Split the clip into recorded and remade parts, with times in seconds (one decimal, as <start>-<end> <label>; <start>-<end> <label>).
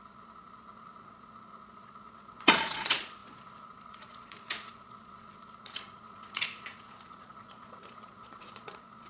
0.0-9.1 remade